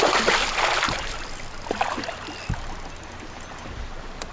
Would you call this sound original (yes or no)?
yes